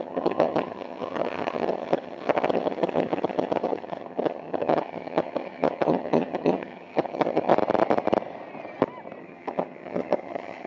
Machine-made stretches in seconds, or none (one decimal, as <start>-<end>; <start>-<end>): 0.0-7.5; 9.2-10.7